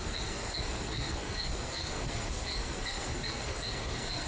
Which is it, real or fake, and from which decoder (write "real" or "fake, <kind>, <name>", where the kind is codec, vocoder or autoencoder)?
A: fake, codec, SNAC